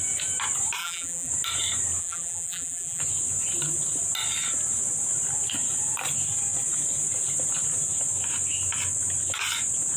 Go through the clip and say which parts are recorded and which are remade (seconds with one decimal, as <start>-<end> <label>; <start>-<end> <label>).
0.0-0.8 recorded; 0.8-1.3 remade; 1.3-2.0 recorded; 2.0-3.0 remade; 3.0-10.0 recorded